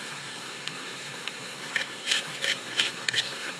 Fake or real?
fake